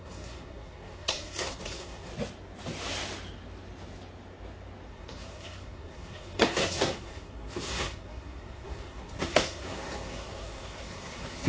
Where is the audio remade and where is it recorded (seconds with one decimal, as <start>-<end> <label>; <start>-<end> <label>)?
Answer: 0.0-2.1 remade; 2.1-4.9 recorded; 4.9-11.5 remade